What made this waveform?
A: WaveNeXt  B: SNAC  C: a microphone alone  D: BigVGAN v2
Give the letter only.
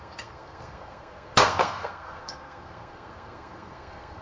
B